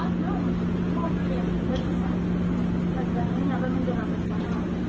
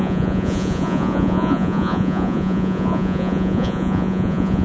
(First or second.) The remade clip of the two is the second